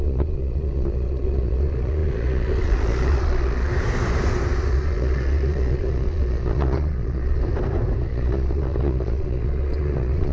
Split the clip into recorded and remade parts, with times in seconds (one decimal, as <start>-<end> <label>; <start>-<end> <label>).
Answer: 0.0-3.7 remade; 3.7-4.7 recorded; 4.7-7.4 remade; 7.4-8.0 recorded; 8.0-10.3 remade